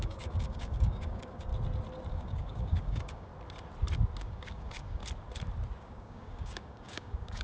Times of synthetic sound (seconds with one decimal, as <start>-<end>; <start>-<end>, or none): 0.0-1.5; 2.1-3.3; 4.2-5.0; 5.8-7.4